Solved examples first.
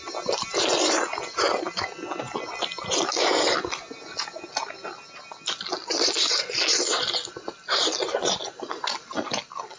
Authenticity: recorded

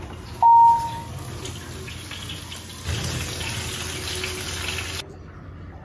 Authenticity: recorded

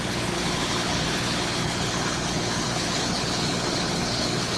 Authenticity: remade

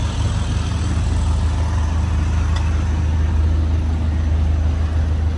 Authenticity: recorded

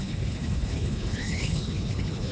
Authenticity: remade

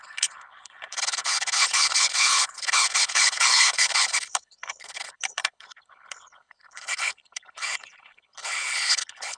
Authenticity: remade